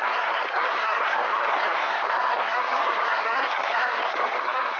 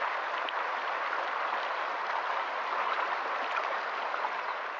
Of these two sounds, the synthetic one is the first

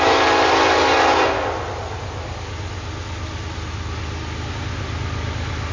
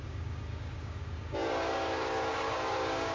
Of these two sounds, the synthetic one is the second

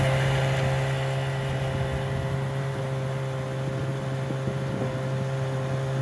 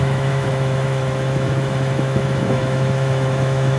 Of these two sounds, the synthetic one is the second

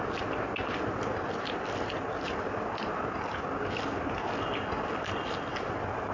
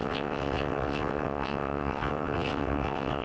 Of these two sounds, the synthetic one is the second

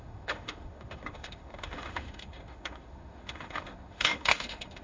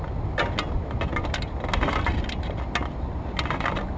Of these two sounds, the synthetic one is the first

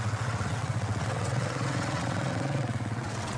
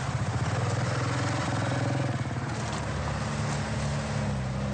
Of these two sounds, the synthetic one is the first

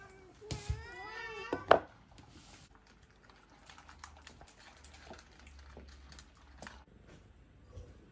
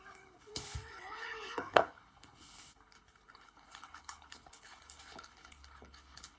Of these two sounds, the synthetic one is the second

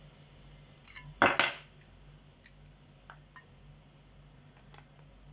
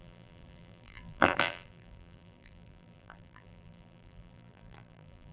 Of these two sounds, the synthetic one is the second